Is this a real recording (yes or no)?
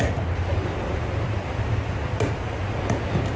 yes